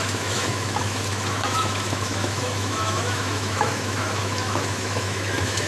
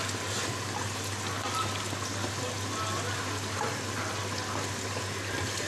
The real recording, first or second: second